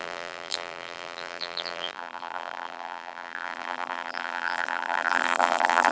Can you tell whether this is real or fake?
fake